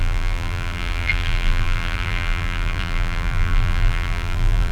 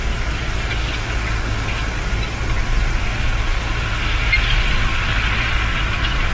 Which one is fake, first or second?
first